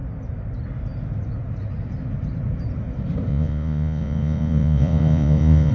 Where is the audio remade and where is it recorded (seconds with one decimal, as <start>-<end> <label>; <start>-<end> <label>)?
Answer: 0.0-3.3 recorded; 3.3-5.7 remade